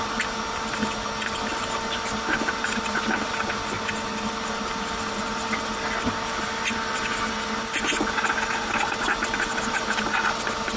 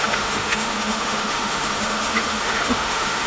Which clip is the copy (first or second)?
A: second